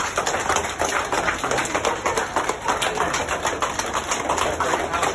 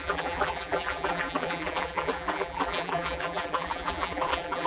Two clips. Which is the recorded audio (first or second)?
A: first